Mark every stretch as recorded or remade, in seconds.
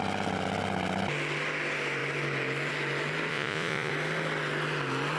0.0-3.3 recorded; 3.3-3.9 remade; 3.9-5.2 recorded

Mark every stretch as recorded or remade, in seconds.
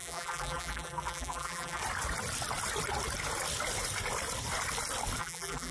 0.0-1.8 remade; 1.8-5.2 recorded; 5.2-5.7 remade